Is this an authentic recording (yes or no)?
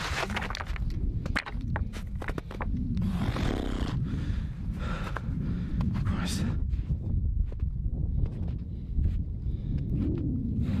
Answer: yes